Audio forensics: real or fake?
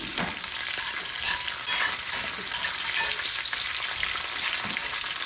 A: real